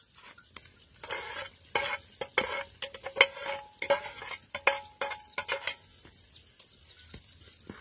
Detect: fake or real real